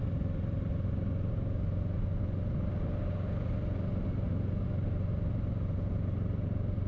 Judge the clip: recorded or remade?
recorded